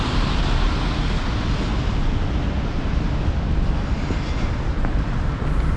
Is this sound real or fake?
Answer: real